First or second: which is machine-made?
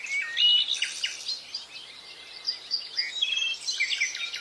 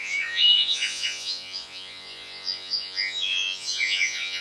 second